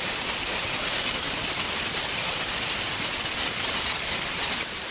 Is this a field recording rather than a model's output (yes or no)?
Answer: yes